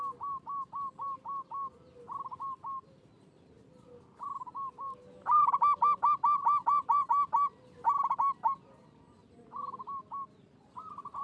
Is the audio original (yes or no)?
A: yes